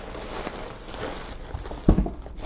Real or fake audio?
real